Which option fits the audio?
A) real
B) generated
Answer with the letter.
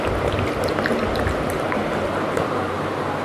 A